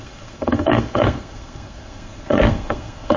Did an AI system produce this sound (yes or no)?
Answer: yes